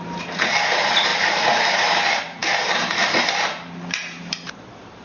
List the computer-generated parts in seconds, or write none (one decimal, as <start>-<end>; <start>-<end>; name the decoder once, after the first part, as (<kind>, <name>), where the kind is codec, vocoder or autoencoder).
0.0-5.0 (vocoder, BigVGAN v2)